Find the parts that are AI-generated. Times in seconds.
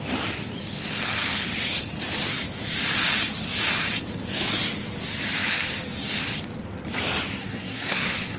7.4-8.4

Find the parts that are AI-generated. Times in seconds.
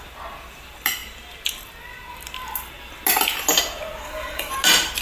4.0-4.5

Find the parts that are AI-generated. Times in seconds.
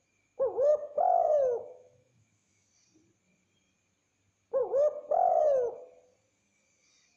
0.7-2.7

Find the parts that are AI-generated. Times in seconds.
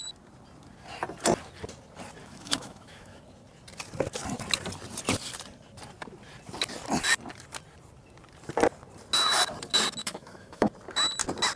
2.2-3.2; 10.0-10.7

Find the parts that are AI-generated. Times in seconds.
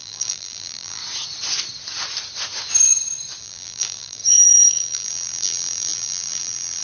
0.0-1.0; 3.4-4.2; 4.7-6.8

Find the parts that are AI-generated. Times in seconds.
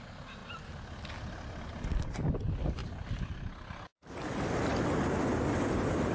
none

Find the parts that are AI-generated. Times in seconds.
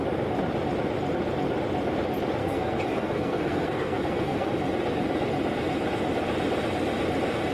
2.4-4.5